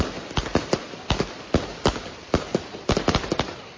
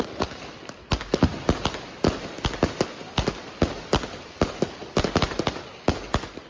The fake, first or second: first